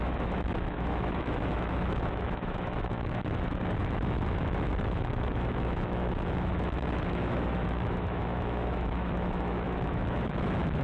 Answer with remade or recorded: remade